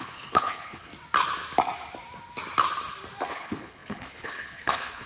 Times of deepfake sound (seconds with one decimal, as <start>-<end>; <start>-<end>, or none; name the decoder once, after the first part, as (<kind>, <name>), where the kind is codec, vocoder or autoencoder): 0.0-0.9 (codec, HILCodec); 3.3-5.1